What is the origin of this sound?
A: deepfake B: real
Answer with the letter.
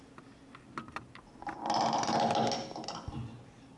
B